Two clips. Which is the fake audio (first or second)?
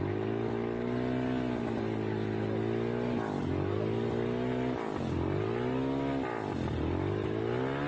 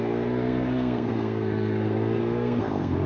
second